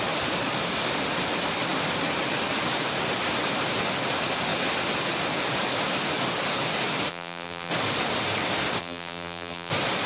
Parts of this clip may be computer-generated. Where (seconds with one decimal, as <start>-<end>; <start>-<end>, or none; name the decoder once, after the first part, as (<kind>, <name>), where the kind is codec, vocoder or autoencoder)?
7.1-7.7 (vocoder, BigVGAN v2); 8.8-9.7